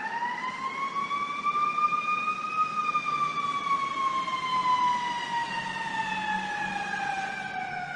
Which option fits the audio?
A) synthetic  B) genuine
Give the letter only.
B